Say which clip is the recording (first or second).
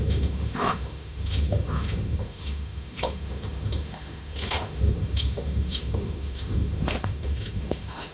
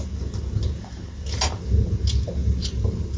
second